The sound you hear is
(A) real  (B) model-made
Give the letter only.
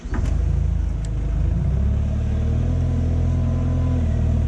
A